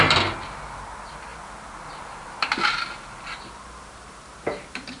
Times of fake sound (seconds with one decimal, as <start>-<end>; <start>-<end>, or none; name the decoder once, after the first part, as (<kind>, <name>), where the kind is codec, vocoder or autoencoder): none